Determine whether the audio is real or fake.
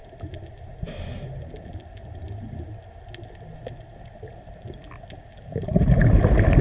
real